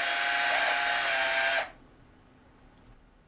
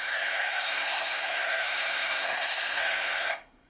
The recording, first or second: first